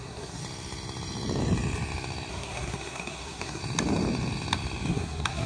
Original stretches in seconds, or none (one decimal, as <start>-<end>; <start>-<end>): 0.4-2.3; 3.6-4.9